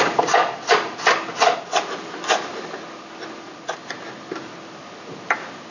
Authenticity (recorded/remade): recorded